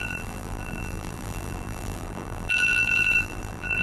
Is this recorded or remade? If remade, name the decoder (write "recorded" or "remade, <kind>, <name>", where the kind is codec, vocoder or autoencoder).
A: remade, vocoder, BigVGAN v2